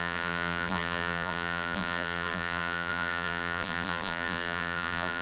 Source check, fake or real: fake